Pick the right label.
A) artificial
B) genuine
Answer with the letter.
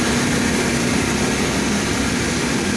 B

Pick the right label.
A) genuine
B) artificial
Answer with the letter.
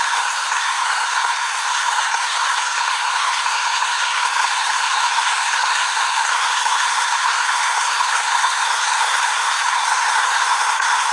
B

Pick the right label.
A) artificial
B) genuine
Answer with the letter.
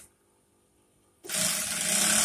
B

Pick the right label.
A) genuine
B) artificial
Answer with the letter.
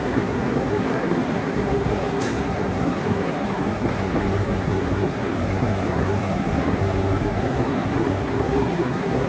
B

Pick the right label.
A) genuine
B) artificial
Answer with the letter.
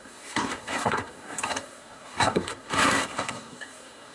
B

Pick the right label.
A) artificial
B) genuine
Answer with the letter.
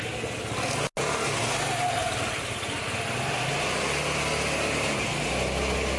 B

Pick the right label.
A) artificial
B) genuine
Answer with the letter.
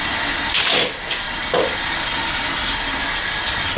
B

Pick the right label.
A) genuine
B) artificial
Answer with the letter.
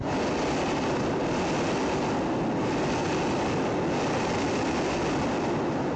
A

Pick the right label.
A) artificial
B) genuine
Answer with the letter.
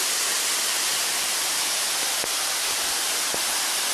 B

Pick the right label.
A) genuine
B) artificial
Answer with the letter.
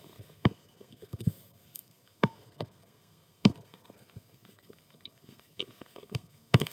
B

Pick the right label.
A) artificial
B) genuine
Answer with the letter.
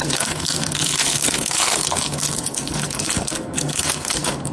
A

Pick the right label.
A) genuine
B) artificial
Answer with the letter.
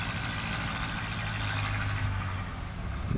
A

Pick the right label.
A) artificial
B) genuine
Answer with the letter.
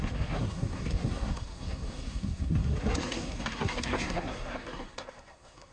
A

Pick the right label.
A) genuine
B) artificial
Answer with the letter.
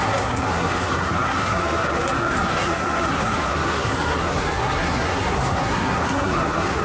B